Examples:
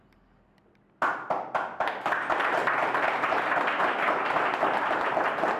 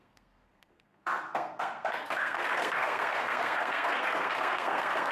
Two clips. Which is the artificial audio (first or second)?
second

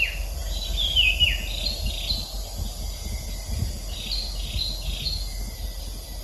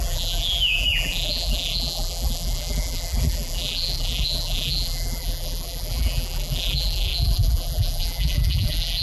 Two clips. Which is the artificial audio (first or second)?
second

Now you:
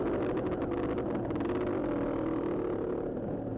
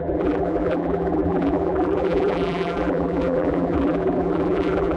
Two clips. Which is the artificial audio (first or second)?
second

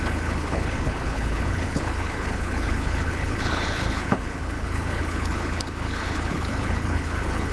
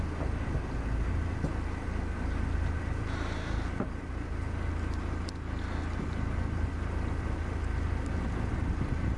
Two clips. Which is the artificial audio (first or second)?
first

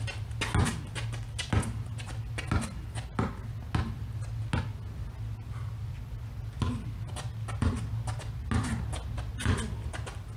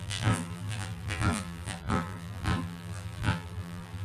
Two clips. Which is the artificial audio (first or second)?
second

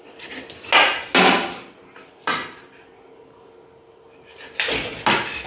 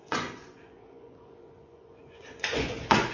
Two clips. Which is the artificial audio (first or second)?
second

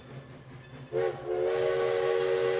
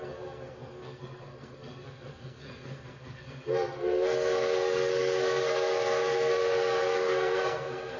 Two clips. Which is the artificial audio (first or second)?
second